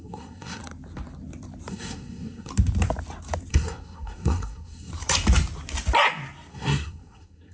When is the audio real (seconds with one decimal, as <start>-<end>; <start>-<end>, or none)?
0.6-1.7; 2.5-3.5; 4.9-6.5